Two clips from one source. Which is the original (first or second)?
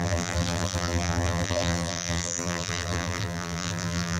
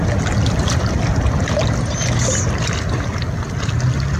second